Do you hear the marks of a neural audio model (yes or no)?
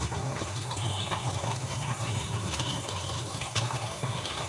yes